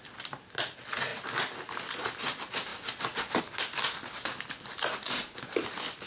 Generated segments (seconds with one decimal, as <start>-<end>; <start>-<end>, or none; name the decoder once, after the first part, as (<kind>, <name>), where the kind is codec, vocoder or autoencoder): none